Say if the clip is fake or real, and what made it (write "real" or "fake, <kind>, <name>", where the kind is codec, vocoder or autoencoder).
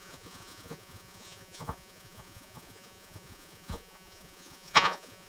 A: fake, vocoder, Vocos